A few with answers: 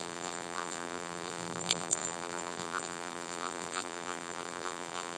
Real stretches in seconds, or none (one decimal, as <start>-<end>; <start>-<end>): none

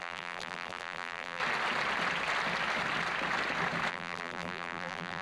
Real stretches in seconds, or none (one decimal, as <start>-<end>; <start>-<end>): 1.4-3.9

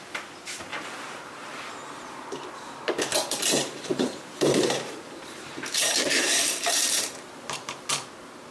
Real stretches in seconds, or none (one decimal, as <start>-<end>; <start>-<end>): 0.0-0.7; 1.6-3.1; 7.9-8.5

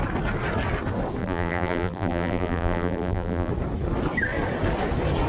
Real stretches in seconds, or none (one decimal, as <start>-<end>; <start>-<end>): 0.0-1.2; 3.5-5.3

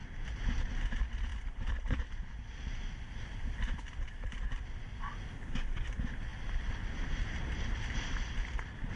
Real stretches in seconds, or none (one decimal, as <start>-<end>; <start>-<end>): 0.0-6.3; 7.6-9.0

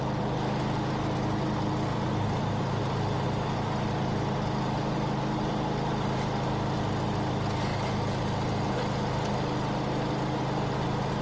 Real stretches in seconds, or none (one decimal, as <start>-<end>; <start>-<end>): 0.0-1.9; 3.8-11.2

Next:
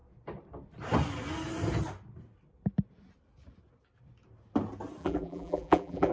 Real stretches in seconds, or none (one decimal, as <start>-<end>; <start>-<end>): 0.0-5.0

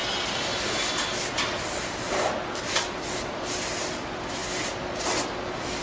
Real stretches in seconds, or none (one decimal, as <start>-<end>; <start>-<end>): 0.0-5.8